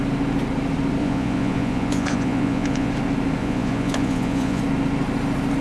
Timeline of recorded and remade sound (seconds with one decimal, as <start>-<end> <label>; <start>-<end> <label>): 0.0-1.0 recorded; 1.0-2.9 remade; 2.9-3.4 recorded; 3.4-4.6 remade; 4.6-5.6 recorded